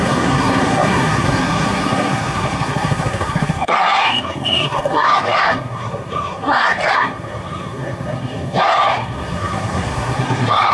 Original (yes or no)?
no